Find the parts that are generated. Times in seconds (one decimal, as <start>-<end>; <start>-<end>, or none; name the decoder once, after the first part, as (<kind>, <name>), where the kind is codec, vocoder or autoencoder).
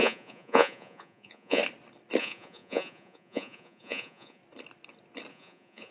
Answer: 0.0-1.6 (vocoder, Vocos); 2.2-4.4; 5.3-5.9